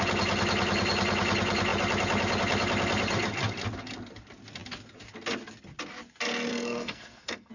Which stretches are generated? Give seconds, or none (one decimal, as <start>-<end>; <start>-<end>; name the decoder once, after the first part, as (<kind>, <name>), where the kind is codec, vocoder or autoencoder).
6.5-7.5 (codec, SNAC)